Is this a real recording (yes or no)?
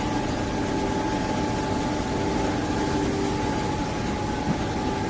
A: yes